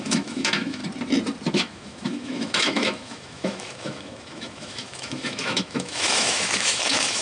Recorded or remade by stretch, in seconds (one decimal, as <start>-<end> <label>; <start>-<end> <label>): 0.0-0.8 remade; 0.8-1.5 recorded; 1.5-7.2 remade